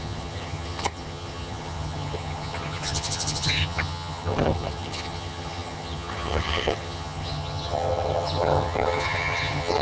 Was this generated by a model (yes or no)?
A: yes